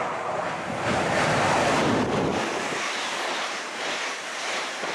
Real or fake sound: fake